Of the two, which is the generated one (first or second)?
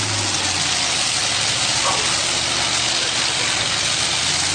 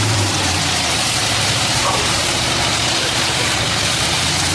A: second